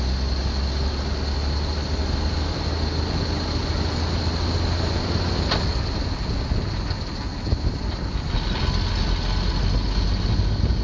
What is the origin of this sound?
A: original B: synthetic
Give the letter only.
A